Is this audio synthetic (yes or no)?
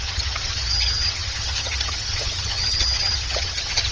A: yes